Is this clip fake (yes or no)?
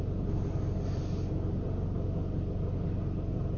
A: no